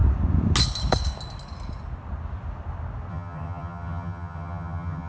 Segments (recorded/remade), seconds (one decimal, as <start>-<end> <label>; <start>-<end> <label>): 0.0-3.1 recorded; 3.1-5.1 remade